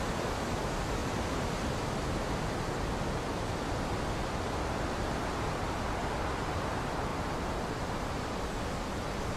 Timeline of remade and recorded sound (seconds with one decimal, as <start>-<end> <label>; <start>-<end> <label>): 0.0-1.0 recorded; 1.0-1.5 remade; 1.5-7.1 recorded; 7.1-8.4 remade; 8.4-9.4 recorded